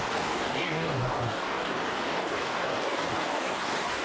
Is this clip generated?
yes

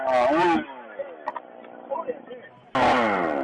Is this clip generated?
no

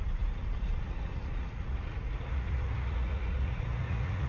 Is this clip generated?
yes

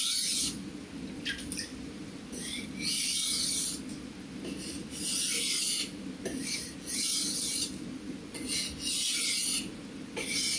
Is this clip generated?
no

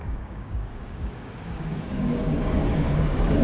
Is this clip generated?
yes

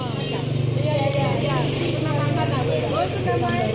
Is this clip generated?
no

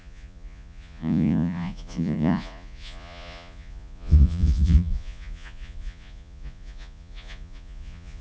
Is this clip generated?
yes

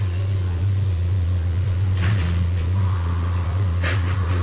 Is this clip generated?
yes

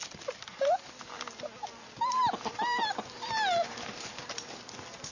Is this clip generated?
no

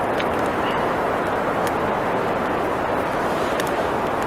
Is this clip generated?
no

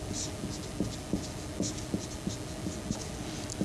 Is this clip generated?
no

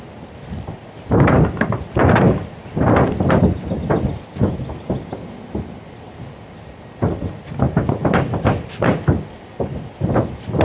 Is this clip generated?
no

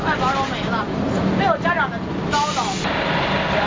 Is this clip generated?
no